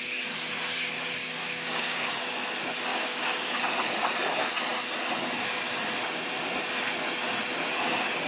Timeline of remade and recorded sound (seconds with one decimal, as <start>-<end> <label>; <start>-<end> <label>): 0.0-1.2 recorded; 1.2-2.1 remade; 2.1-2.9 recorded; 2.9-3.6 remade; 3.6-8.3 recorded